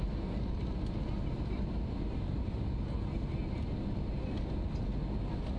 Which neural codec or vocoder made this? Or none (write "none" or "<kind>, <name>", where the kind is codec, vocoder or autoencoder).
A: none